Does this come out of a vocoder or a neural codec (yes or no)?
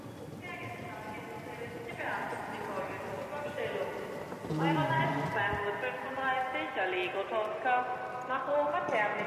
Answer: no